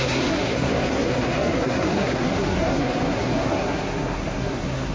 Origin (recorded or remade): remade